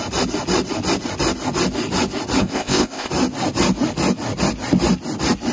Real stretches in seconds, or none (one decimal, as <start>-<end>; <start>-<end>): 0.0-2.4; 3.1-5.5